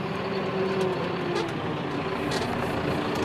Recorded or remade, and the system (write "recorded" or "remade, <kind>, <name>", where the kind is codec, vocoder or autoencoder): recorded